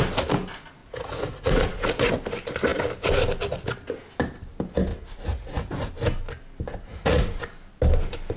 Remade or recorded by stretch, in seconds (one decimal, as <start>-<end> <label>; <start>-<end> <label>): 0.0-0.8 recorded; 0.8-2.1 remade; 2.1-4.9 recorded; 4.9-5.9 remade; 5.9-6.7 recorded; 6.7-7.4 remade; 7.4-8.4 recorded